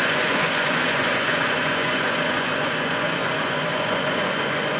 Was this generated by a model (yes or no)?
yes